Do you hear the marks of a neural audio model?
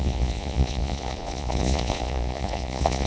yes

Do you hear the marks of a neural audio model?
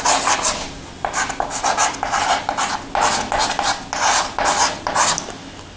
no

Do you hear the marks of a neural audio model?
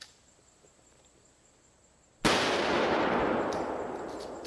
no